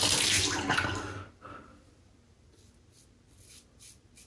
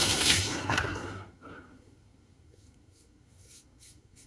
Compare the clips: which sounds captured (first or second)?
first